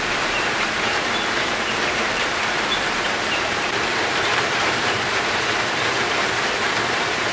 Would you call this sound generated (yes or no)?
yes